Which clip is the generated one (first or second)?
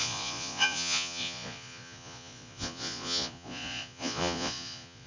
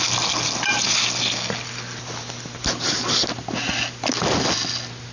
first